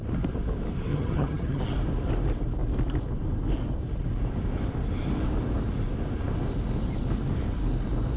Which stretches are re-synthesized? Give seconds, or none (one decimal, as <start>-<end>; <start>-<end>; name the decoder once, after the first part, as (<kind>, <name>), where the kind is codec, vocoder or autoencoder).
0.9-1.6 (vocoder, HiFi-GAN)